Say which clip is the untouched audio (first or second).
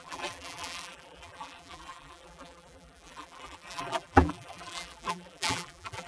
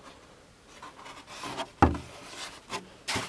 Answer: second